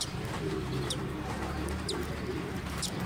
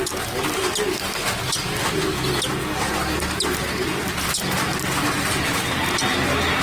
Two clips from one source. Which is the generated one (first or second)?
first